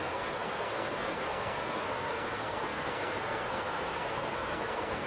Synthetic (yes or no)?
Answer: yes